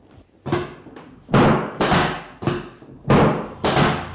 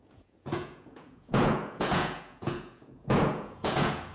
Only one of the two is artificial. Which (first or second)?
second